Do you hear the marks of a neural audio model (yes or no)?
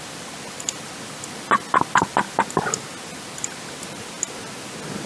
no